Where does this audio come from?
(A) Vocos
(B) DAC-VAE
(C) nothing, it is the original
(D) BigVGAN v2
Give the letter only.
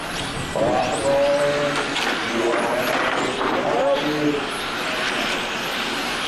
C